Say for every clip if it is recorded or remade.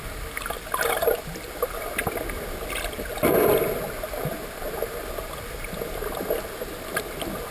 recorded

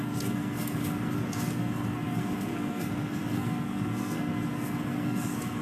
remade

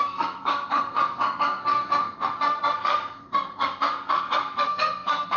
remade